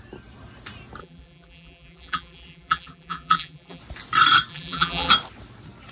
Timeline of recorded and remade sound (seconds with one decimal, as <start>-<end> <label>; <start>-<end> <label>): 0.0-1.0 recorded; 1.0-3.8 remade; 3.8-4.5 recorded; 4.5-5.1 remade; 5.1-5.9 recorded